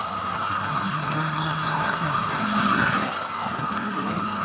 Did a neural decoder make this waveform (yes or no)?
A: yes